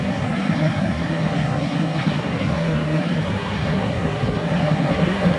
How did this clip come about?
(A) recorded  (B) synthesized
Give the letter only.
B